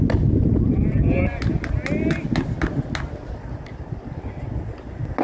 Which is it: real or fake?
real